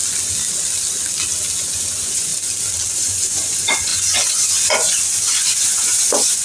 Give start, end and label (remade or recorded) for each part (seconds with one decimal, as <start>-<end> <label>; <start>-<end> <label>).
0.0-1.6 recorded; 1.6-2.3 remade; 2.3-2.9 recorded; 2.9-6.4 remade